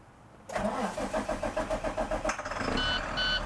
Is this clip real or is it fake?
real